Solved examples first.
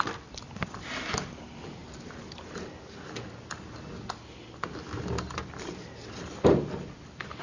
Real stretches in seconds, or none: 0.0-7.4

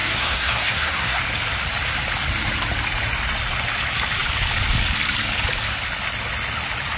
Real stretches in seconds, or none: 1.2-7.0

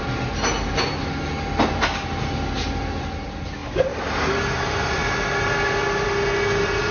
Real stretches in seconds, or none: 0.0-6.9

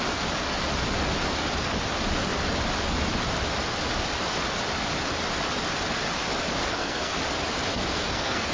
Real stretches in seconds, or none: 0.0-6.6; 7.2-7.7

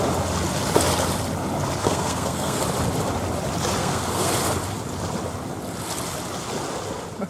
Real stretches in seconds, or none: 0.0-1.8; 2.6-3.8; 4.3-7.3

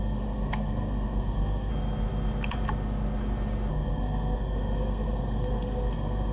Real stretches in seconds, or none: 1.7-3.7